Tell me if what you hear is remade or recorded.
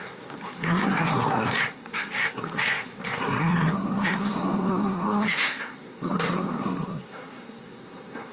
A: remade